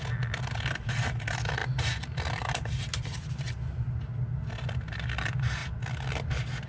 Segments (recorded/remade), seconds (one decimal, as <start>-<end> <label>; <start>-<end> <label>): 0.0-6.7 recorded